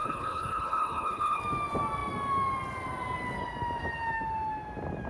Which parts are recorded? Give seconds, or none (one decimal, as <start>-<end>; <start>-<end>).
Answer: 1.4-5.1

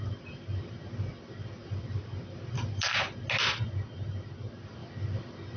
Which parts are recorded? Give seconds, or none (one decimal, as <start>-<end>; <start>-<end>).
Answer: 0.0-5.6

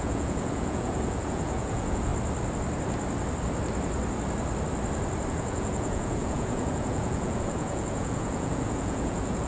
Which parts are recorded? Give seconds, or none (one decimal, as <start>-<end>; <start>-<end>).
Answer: 2.1-5.3

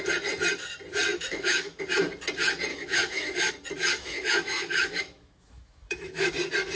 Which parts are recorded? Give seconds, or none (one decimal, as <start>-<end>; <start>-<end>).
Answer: 0.0-1.1; 1.8-2.7; 3.5-3.9; 6.3-6.8

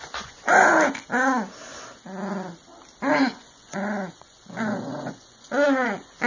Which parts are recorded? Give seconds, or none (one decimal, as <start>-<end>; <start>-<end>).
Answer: 0.7-3.2

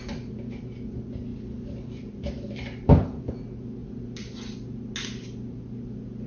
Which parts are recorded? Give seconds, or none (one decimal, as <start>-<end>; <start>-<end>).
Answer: 0.0-1.3; 3.3-6.3